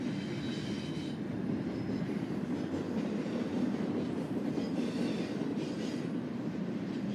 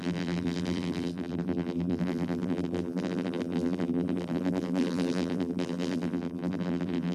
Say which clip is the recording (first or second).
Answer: first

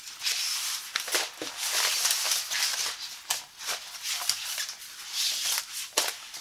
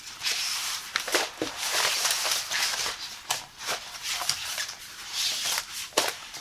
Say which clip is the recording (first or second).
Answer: first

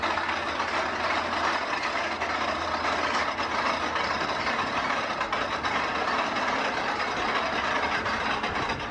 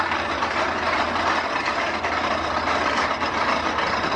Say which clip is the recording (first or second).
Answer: first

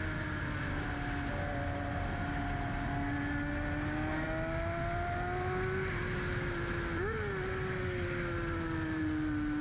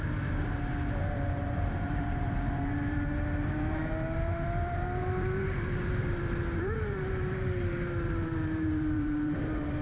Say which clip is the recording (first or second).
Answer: first